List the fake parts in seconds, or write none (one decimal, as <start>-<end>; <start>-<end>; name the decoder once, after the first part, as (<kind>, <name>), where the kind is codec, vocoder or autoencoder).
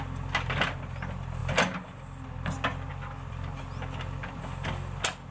none